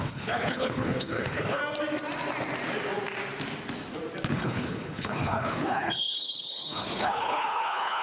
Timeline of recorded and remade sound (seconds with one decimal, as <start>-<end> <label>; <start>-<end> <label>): 0.0-1.6 remade; 1.6-4.3 recorded; 4.3-8.0 remade